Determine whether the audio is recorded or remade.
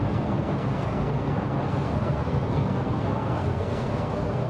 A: remade